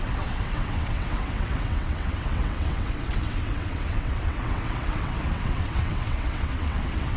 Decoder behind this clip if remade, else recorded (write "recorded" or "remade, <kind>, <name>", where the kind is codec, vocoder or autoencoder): remade, vocoder, WaveNeXt